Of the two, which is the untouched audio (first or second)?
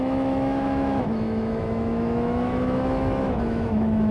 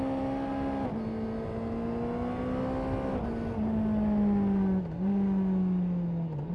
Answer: second